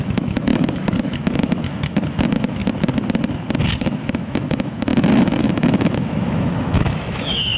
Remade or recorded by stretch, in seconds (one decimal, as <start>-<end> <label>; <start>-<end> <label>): 0.0-2.6 remade; 2.6-3.8 recorded; 3.8-7.6 remade